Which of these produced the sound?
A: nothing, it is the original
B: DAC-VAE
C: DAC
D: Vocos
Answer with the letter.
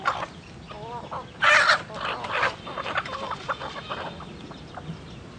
A